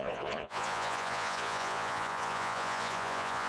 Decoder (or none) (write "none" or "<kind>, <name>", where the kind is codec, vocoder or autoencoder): vocoder, Vocos